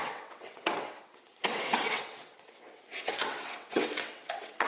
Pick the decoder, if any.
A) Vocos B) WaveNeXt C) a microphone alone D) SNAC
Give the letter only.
B